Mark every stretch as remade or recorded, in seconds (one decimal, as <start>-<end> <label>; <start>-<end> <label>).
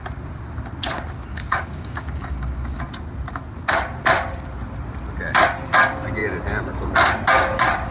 0.0-1.3 recorded; 1.3-2.8 remade; 2.8-7.9 recorded